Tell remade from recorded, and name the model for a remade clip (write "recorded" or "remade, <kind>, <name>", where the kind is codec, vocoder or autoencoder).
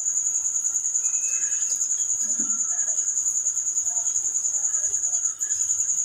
remade, vocoder, BigVGAN v2